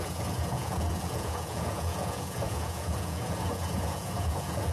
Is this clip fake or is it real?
fake